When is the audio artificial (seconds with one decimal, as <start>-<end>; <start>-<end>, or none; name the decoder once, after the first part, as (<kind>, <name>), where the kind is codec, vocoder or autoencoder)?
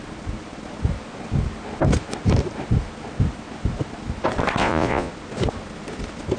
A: 4.6-5.1 (vocoder, Vocos)